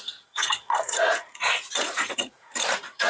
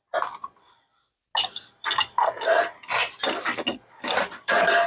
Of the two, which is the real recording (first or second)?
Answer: second